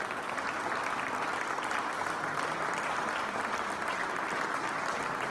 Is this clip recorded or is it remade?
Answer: recorded